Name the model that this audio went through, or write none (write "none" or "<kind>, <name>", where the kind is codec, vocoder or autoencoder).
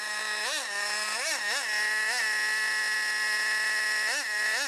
none